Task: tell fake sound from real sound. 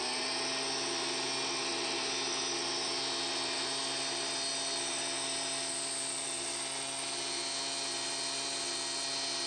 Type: real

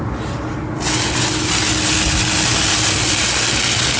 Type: real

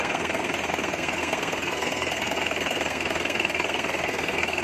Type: fake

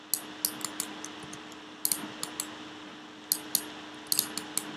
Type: real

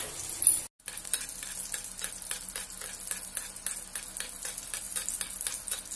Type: real